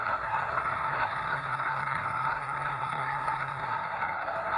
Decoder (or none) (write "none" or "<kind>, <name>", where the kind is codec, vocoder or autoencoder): codec, SNAC